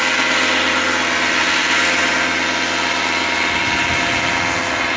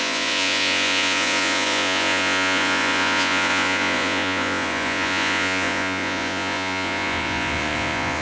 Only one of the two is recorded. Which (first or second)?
first